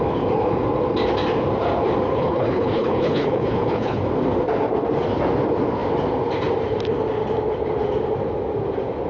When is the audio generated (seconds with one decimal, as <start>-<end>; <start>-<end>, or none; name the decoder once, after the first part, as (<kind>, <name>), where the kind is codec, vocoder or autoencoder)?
2.1-4.0 (codec, HILCodec)